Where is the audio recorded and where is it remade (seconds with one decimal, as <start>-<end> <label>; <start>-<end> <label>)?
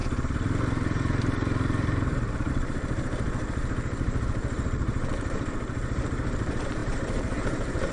0.0-7.9 remade